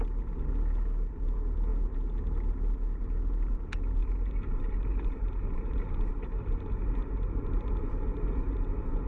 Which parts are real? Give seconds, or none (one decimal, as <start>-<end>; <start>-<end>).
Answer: 0.0-4.0